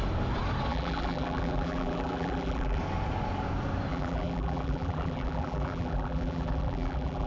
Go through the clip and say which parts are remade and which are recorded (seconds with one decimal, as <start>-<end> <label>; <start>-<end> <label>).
0.0-0.7 recorded; 0.7-2.8 remade; 2.8-3.9 recorded; 3.9-7.3 remade